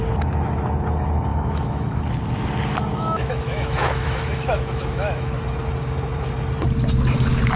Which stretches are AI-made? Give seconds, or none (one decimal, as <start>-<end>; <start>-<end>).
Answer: 1.3-2.0; 2.9-5.4